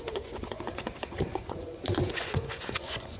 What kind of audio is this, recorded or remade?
remade